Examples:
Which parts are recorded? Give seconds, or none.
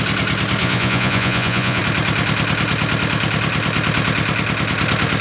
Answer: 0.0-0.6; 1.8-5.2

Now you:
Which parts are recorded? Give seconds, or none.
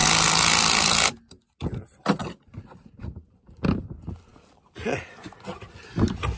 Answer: 0.0-2.2; 3.3-6.4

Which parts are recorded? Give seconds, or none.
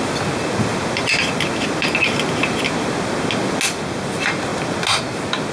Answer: 0.0-5.5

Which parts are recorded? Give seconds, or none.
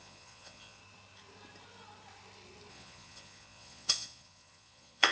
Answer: 0.8-2.7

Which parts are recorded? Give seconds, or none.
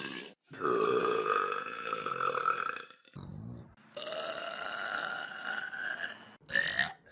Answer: 0.0-1.0; 2.1-7.1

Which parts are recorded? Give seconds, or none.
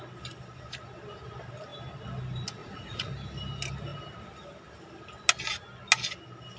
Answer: 0.0-2.6; 3.1-6.6